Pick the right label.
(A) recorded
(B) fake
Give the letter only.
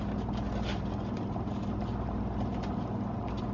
A